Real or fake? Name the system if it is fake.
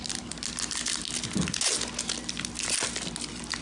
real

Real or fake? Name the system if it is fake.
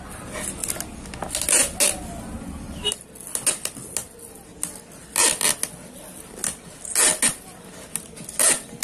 real